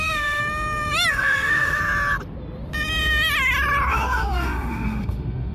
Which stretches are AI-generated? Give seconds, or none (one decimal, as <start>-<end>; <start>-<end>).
0.0-0.4; 1.1-1.8; 3.9-5.5